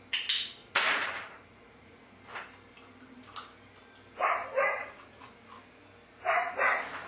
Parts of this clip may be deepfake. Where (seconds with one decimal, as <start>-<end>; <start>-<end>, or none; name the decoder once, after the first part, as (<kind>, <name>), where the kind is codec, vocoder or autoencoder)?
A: 0.6-2.1 (vocoder, Vocos); 4.7-5.3